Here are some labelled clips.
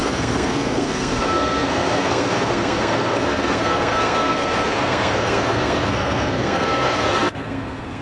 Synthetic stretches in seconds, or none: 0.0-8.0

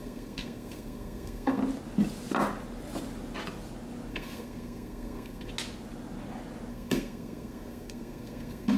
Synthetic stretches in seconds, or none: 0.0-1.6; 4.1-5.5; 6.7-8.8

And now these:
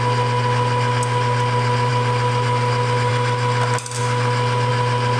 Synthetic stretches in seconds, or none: none

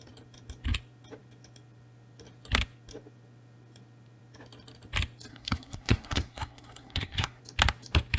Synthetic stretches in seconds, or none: 5.3-7.4